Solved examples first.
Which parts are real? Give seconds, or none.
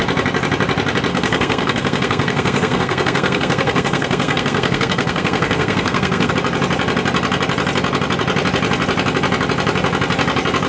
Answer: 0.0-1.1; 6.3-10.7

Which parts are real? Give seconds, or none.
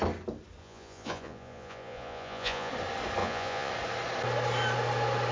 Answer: 0.0-0.6; 2.7-3.2; 3.7-5.3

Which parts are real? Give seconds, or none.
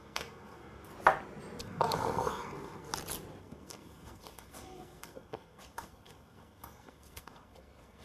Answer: 0.9-1.6; 2.9-3.4